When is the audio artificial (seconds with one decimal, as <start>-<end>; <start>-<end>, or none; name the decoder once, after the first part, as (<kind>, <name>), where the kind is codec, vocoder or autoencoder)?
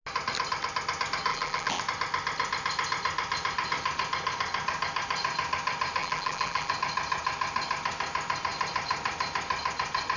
1.3-1.8 (vocoder, BigVGAN v2); 6.0-6.7